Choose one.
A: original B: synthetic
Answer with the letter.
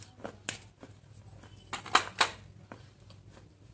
A